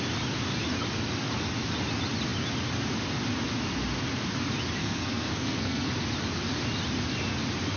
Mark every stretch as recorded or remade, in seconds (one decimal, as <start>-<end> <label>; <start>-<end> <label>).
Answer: 0.0-4.8 recorded; 4.8-5.9 remade; 5.9-7.8 recorded